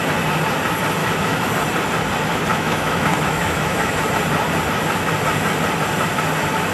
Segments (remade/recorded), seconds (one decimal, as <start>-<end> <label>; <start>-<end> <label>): 0.0-1.0 recorded; 1.0-1.5 remade; 1.5-2.5 recorded; 2.5-4.0 remade; 4.0-6.7 recorded